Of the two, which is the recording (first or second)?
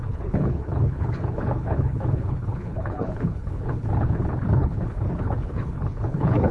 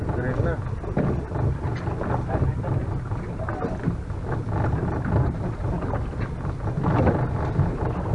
second